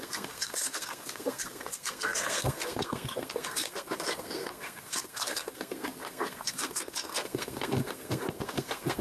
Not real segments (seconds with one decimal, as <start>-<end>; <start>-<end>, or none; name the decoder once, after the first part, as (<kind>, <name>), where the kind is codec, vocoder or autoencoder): 0.0-9.0 (codec, SNAC)